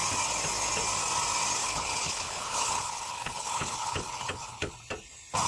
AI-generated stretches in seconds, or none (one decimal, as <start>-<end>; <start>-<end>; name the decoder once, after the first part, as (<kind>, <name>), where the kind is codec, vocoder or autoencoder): 1.6-4.7 (codec, HILCodec)